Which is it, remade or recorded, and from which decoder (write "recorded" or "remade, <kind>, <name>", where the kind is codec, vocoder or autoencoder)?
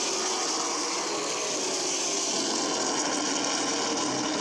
recorded